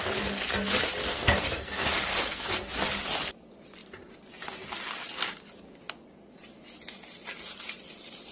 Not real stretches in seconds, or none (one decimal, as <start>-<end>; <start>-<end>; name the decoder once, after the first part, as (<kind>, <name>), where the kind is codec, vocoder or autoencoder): 1.1-2.5 (codec, SNAC)